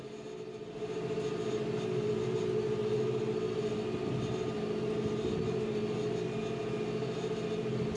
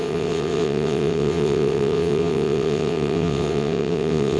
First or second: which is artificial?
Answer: second